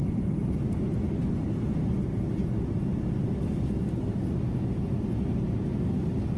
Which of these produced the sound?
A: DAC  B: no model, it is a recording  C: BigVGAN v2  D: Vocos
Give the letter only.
B